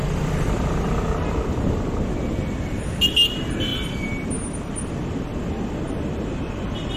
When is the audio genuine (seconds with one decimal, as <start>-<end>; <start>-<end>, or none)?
0.0-7.0